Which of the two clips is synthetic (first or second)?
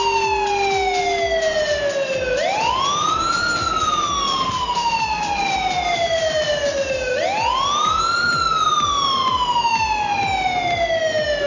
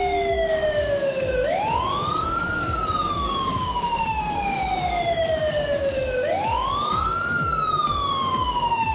second